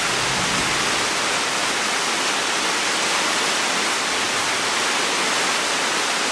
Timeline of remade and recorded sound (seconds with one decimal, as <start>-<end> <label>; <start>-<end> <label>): 0.0-6.3 recorded